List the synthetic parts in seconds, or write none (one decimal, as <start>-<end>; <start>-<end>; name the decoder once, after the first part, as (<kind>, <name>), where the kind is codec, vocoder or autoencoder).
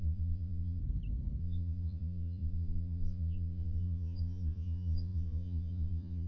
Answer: 0.0-0.8 (vocoder, Vocos); 1.4-6.3